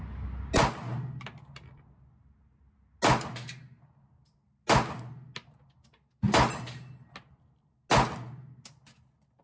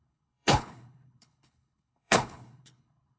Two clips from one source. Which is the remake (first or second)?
second